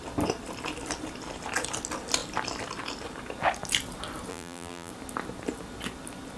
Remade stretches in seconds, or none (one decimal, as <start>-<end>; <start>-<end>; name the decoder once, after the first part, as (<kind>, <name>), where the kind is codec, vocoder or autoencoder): 4.3-4.9 (vocoder, BigVGAN v2)